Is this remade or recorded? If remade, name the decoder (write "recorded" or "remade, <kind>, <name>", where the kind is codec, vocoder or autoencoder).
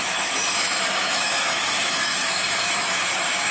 remade, autoencoder, DAC-VAE